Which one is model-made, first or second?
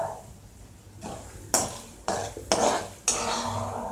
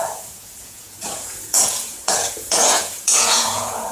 second